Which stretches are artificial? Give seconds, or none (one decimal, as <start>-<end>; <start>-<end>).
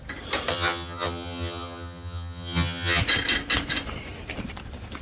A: 0.5-3.0